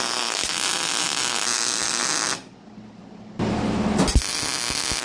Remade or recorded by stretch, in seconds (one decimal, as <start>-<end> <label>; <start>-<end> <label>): 0.0-5.0 recorded